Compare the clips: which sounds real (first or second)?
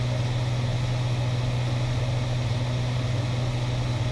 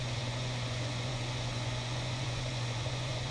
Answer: first